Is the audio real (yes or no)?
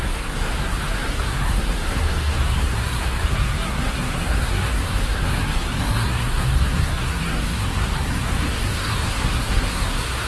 no